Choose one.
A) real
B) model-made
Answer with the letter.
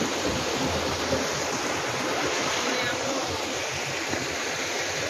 A